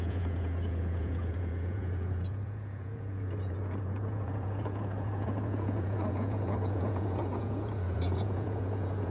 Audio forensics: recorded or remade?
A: remade